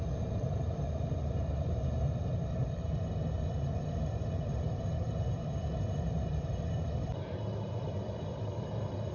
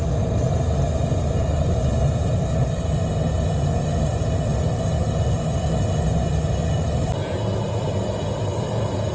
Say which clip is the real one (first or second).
second